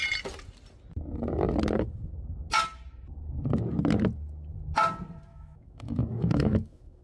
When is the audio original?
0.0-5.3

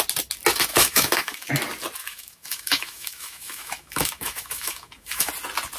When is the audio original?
0.0-0.7; 1.5-2.0; 5.3-5.8

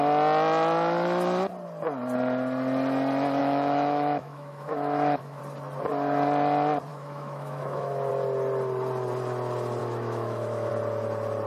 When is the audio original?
0.0-3.4; 5.4-6.9; 8.1-9.8; 10.7-11.5